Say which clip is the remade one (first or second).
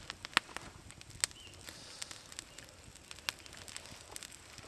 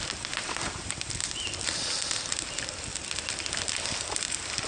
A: second